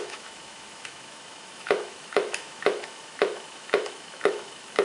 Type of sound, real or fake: fake